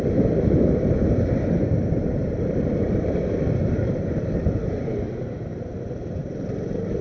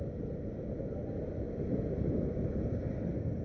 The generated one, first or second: first